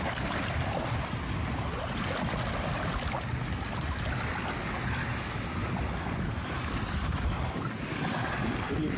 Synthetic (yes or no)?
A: no